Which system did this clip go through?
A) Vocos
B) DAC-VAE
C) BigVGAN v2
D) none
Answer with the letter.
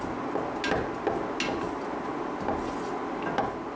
D